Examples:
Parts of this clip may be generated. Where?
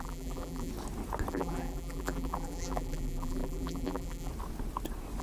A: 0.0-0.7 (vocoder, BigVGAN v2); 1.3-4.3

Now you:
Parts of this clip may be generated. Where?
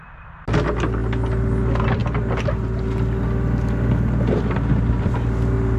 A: none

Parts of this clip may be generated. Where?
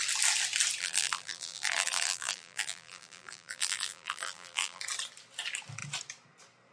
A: 0.8-4.8 (vocoder, BigVGAN v2)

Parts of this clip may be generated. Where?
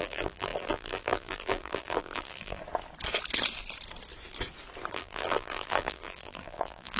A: 0.0-2.6 (vocoder, BigVGAN v2); 4.9-7.0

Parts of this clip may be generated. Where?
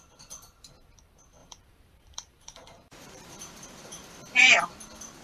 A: 1.4-4.5 (vocoder, BigVGAN v2)